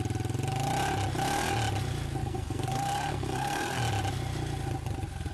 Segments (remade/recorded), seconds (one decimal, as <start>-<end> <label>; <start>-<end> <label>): 0.0-2.2 recorded; 2.2-3.8 remade; 3.8-5.3 recorded

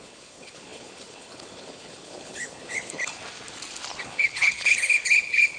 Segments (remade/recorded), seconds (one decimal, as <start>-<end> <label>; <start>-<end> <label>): 0.0-3.2 remade; 3.2-4.0 recorded; 4.0-5.6 remade

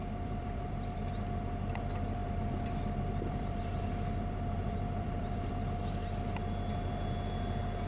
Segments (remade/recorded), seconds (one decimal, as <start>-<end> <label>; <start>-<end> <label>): 0.0-1.1 remade; 1.1-2.2 recorded; 2.2-5.5 remade; 5.5-7.9 recorded

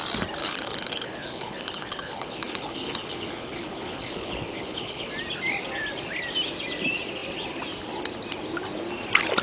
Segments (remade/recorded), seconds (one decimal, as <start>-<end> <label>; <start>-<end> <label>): 0.0-0.4 recorded; 0.4-5.1 remade; 5.1-9.4 recorded

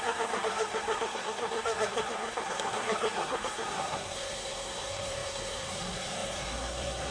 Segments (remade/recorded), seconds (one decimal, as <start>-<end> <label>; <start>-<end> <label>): 0.0-7.1 remade

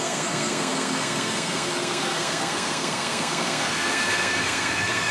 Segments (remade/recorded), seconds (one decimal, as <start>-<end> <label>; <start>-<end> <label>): 0.0-5.1 remade

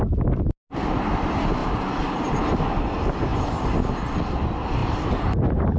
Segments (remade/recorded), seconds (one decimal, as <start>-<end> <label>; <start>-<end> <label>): 0.0-1.6 recorded; 1.6-2.5 remade; 2.5-3.3 recorded; 3.3-3.8 remade; 3.8-4.8 recorded; 4.8-5.8 remade

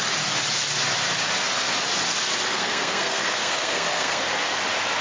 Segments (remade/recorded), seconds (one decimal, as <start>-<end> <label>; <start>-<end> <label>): 0.0-2.5 recorded; 2.5-4.2 remade; 4.2-5.0 recorded